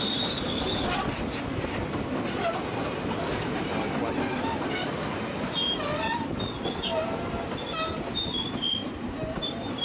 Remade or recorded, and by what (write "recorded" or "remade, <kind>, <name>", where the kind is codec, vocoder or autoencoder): recorded